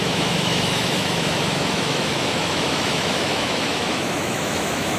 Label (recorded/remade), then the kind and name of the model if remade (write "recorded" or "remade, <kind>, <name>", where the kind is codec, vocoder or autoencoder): remade, autoencoder, DAC-VAE